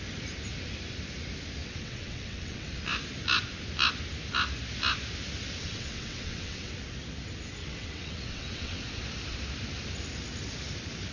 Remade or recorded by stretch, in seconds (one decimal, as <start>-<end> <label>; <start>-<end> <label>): 0.0-1.6 recorded; 1.6-2.8 remade; 2.8-5.6 recorded; 5.6-6.7 remade; 6.7-7.6 recorded; 7.6-8.8 remade; 8.8-11.1 recorded